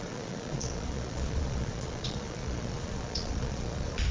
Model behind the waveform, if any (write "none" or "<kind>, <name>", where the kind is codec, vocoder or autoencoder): vocoder, Vocos